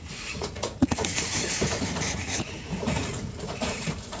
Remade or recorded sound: remade